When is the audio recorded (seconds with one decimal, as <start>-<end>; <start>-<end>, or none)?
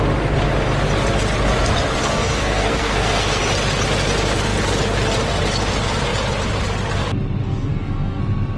0.0-2.0; 3.4-7.4; 8.2-8.6